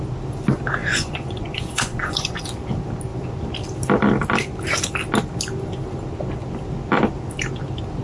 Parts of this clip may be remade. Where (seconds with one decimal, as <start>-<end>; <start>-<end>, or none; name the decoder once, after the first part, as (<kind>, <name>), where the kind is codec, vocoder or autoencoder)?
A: 0.8-2.4 (vocoder, Vocos)

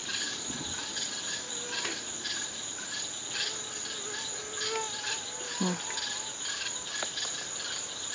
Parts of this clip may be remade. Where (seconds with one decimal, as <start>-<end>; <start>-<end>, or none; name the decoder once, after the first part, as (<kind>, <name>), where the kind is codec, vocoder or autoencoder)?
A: 0.0-3.0 (vocoder, BigVGAN v2)

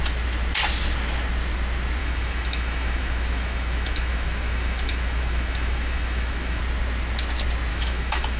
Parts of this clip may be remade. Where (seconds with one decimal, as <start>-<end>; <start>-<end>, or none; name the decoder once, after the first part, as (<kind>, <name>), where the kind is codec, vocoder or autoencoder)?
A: 2.0-6.6 (autoencoder, DAC-VAE); 7.7-8.4